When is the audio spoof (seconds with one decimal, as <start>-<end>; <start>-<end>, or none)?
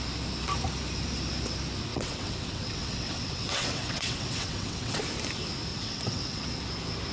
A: 1.9-5.0; 5.7-6.5